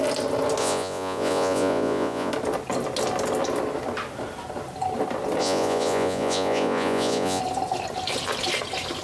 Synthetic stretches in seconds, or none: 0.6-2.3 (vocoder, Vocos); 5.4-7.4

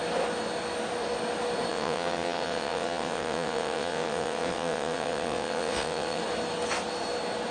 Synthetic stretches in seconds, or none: 1.7-6.2 (vocoder, WaveNeXt)